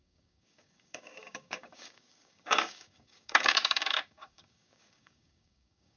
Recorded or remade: remade